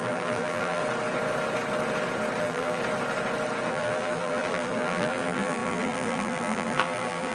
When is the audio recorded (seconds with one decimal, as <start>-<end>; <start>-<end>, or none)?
0.8-2.4; 2.8-3.7